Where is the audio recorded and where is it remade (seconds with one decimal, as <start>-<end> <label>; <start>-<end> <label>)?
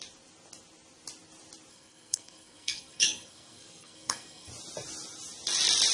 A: 0.0-1.7 recorded; 1.7-4.5 remade; 4.5-5.9 recorded